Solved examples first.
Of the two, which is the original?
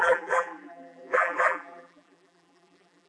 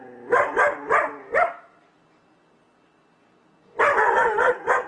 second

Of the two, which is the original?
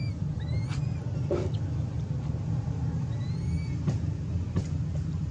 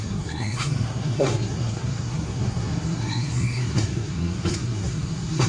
first